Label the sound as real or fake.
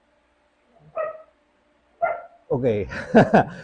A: real